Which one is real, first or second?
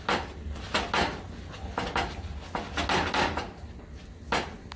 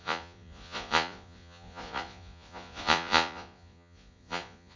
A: first